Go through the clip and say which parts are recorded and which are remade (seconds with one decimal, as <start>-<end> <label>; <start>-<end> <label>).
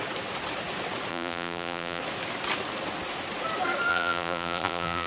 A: 0.0-1.1 recorded; 1.1-2.0 remade; 2.0-3.9 recorded; 3.9-5.1 remade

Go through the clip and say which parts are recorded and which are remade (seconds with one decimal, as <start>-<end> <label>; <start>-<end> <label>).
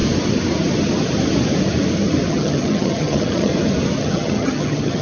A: 0.0-2.3 recorded; 2.3-3.5 remade; 3.5-4.0 recorded; 4.0-5.0 remade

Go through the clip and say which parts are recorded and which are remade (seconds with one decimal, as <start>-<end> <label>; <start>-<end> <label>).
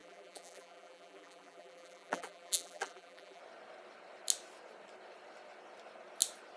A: 0.0-3.4 remade; 3.4-6.6 recorded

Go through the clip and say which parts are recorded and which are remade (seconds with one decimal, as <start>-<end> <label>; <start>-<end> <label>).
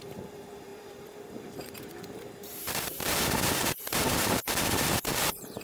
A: 0.0-5.6 remade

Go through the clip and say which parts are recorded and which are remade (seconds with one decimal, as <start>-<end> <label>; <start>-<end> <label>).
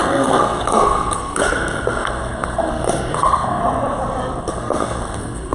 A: 0.0-3.6 remade; 3.6-4.4 recorded; 4.4-5.5 remade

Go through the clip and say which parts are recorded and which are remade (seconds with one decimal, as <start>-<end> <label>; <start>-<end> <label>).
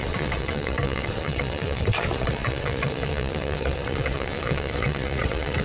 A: 0.0-5.6 remade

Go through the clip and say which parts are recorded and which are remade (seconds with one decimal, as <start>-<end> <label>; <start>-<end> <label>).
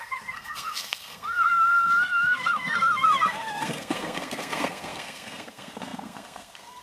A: 0.0-6.8 remade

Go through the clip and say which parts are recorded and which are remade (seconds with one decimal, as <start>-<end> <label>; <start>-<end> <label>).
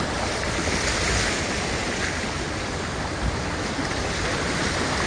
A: 0.0-5.1 recorded